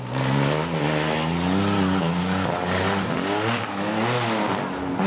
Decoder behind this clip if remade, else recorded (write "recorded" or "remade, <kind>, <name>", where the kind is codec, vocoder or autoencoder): recorded